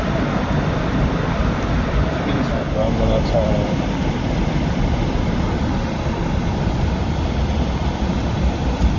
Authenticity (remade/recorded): remade